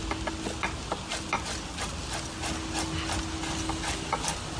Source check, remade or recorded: recorded